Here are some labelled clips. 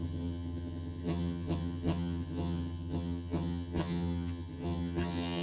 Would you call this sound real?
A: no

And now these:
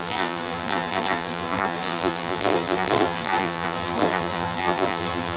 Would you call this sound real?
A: no